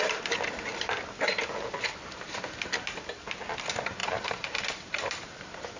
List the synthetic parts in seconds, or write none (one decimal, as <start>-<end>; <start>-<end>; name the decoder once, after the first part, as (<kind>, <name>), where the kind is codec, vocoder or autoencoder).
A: 4.0-5.8 (vocoder, BigVGAN v2)